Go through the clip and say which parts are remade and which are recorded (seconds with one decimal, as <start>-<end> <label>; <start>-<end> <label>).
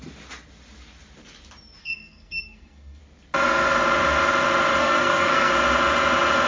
0.0-1.8 recorded; 1.8-3.0 remade; 3.0-4.8 recorded; 4.8-5.5 remade; 5.5-6.5 recorded